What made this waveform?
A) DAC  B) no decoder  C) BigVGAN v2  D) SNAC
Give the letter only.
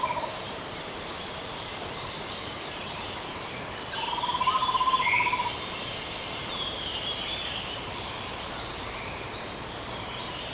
C